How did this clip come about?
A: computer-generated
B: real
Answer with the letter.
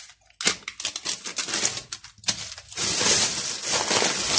B